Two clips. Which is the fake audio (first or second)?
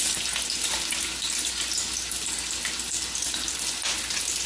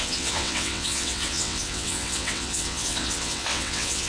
second